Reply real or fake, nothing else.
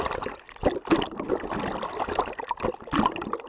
real